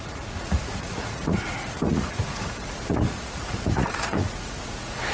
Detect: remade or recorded remade